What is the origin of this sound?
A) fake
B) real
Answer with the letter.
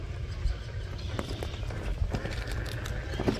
B